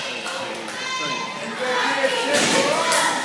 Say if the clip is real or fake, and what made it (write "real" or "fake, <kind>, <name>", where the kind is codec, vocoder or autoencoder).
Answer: real